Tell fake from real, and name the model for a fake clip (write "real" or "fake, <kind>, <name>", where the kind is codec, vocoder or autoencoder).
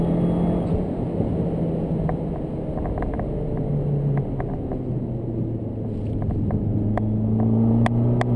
real